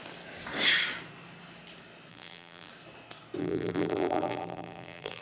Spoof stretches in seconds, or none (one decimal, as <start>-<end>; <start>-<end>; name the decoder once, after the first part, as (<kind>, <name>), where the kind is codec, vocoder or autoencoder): 2.1-2.7 (vocoder, BigVGAN v2); 3.4-5.2